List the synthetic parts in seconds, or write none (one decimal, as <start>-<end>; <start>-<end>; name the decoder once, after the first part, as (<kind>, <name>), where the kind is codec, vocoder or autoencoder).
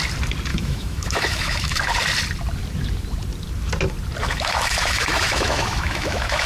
0.5-1.8 (autoencoder, DAC-VAE); 4.2-6.5